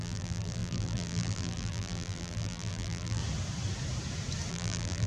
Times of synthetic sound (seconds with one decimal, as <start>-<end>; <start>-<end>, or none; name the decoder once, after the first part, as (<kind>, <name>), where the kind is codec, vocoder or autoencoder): 0.0-3.2 (vocoder, BigVGAN v2); 4.5-5.1